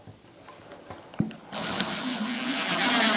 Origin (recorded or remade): recorded